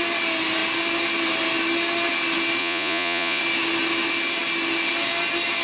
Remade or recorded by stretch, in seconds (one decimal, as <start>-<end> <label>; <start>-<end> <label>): 0.0-2.6 recorded; 2.6-3.4 remade; 3.4-5.6 recorded